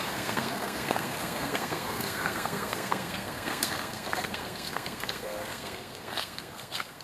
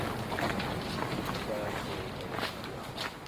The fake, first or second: first